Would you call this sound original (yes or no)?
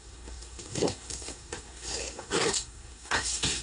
no